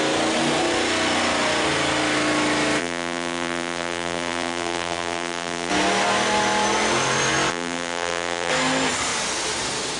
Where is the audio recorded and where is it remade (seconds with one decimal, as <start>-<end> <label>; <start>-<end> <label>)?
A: 0.0-2.8 recorded; 2.8-5.7 remade; 5.7-7.5 recorded; 7.5-8.5 remade; 8.5-10.0 recorded

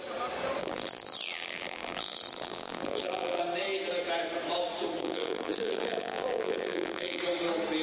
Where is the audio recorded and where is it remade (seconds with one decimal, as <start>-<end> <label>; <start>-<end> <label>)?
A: 0.0-0.6 recorded; 0.6-3.4 remade; 3.4-5.0 recorded; 5.0-7.2 remade; 7.2-7.8 recorded

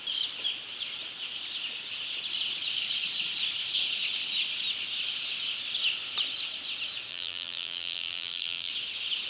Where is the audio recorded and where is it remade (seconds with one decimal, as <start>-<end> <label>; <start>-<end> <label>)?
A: 0.0-7.1 recorded; 7.1-8.7 remade; 8.7-9.3 recorded

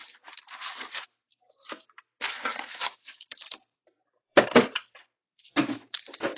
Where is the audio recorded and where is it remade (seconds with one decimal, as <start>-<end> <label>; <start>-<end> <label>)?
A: 0.0-1.0 remade; 1.0-2.5 recorded; 2.5-5.3 remade; 5.3-6.4 recorded

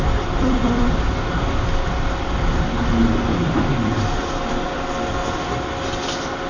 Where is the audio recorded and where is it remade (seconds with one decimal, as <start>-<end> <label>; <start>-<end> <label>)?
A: 0.0-5.2 remade; 5.2-6.5 recorded

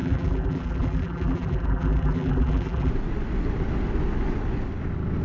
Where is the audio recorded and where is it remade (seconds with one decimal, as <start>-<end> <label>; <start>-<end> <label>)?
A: 0.0-2.9 remade; 2.9-5.2 recorded

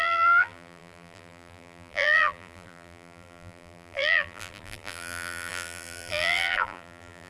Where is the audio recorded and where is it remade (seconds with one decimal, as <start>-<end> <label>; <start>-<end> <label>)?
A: 0.0-7.3 remade